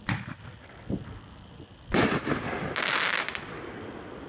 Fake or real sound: real